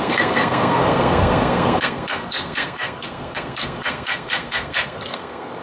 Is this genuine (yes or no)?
no